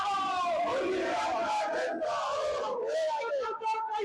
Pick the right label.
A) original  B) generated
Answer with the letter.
A